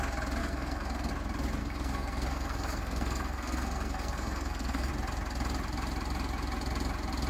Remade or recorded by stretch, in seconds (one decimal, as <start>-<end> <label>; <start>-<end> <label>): 0.0-0.4 recorded; 0.4-1.1 remade; 1.1-1.6 recorded; 1.6-4.9 remade; 4.9-7.3 recorded